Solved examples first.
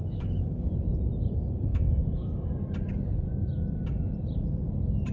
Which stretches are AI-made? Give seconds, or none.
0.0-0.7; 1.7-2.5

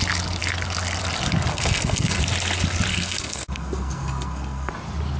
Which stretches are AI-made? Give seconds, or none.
1.5-2.2; 2.9-4.7

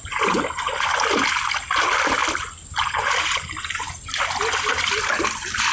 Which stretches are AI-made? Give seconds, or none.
none

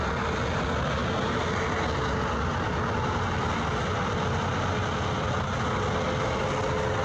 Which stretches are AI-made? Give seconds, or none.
none

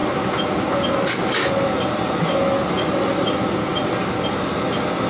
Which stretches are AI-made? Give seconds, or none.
none

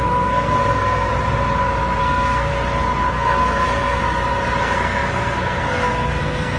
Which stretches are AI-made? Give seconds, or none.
0.0-1.1; 2.0-2.5; 3.1-4.0; 4.6-6.6

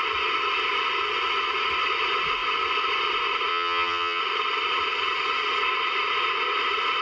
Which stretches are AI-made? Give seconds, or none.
3.5-4.2

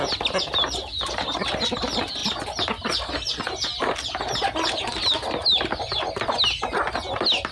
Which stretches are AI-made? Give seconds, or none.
none